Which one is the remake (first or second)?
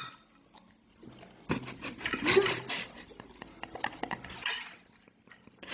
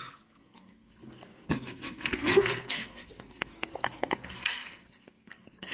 second